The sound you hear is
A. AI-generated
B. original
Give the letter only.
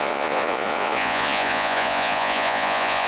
A